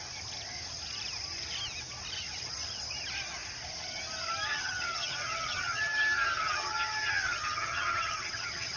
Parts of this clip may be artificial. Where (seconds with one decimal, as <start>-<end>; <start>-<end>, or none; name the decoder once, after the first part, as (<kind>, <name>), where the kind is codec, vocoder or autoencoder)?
4.5-8.8 (vocoder, HiFi-GAN)

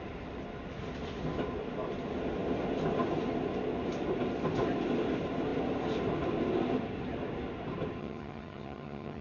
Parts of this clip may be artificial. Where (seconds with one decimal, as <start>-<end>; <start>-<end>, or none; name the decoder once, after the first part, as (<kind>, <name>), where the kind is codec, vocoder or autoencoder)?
8.0-9.2 (vocoder, HiFi-GAN)

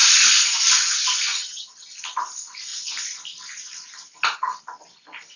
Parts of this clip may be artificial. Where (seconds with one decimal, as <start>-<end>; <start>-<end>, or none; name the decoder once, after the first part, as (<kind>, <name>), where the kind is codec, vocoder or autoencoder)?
1.3-1.9 (vocoder, HiFi-GAN)